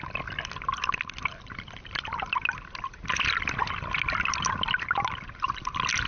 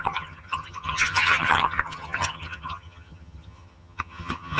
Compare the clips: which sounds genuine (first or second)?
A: first